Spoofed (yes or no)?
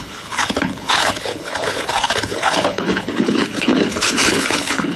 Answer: yes